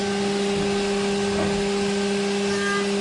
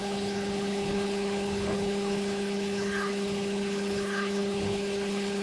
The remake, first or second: second